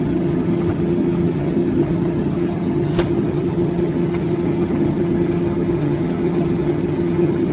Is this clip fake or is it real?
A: fake